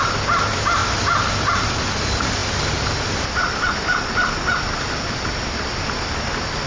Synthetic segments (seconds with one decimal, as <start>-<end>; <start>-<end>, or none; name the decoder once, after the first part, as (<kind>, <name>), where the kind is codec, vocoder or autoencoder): none